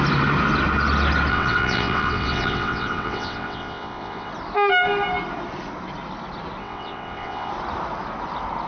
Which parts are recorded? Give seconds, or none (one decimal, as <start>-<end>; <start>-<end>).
0.0-1.3; 4.3-6.6; 7.5-8.7